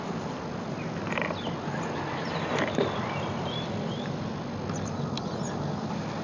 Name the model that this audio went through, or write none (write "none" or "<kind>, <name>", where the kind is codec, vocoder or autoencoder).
none